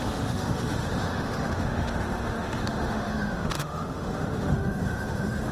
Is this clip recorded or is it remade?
remade